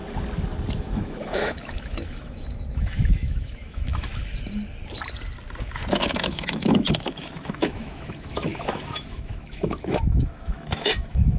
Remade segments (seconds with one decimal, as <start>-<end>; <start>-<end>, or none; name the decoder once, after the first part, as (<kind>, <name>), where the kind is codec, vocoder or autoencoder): 0.8-4.1 (autoencoder, DAC-VAE); 5.9-11.4